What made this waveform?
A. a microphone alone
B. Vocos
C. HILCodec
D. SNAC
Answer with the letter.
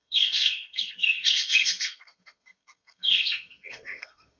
D